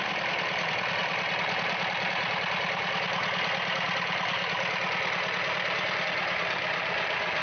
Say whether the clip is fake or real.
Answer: real